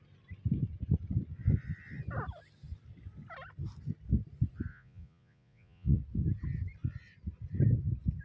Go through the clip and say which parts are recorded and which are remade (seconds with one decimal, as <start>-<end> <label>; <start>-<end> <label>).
0.0-4.7 recorded; 4.7-6.0 remade; 6.0-8.2 recorded